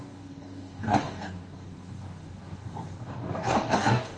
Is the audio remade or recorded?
remade